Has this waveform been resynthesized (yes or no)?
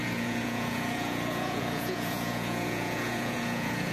yes